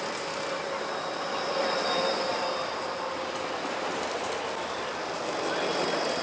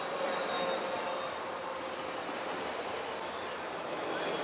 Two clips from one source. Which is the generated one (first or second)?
first